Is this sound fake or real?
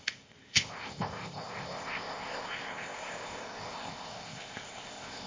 fake